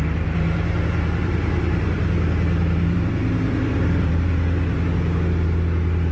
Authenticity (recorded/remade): remade